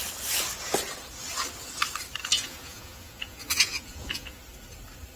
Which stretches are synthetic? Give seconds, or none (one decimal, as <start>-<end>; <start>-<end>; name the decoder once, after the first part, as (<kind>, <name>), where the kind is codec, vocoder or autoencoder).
2.3-4.4 (vocoder, Vocos)